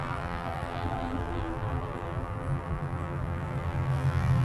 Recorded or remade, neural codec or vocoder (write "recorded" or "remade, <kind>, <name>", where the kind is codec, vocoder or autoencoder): remade, vocoder, BigVGAN v2